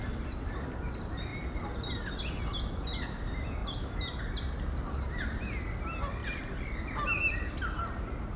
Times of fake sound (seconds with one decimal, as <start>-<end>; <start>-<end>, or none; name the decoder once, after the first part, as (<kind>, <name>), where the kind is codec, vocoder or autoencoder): 1.3-2.1 (vocoder, BigVGAN v2); 3.6-4.2; 6.2-7.5